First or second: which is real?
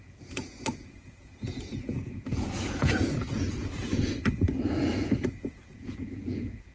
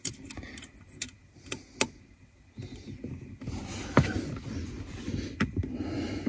second